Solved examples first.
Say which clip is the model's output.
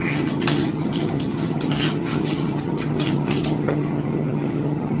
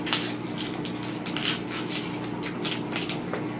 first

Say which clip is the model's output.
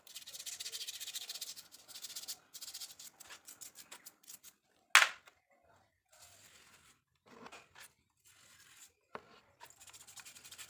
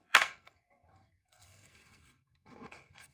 second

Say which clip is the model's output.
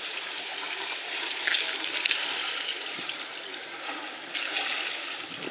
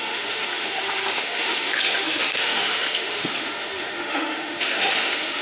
second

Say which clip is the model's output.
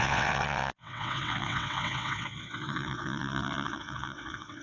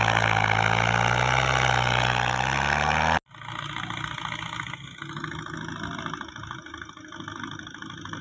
first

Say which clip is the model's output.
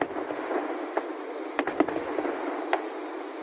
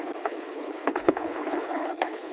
second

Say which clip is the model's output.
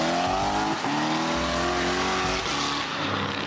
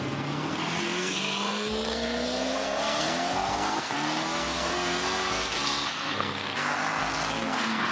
second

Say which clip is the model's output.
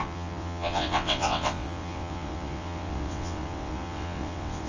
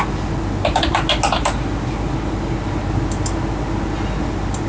first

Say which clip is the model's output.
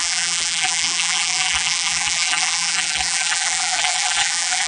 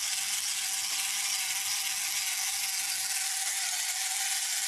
first